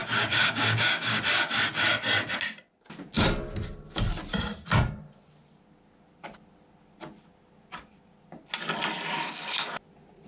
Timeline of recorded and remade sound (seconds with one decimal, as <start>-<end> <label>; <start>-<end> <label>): 0.0-1.2 remade; 1.2-10.3 recorded